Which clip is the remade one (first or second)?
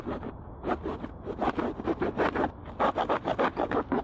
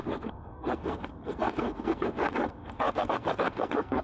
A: second